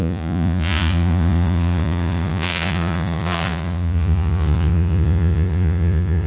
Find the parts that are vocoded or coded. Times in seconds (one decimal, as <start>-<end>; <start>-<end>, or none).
0.0-6.3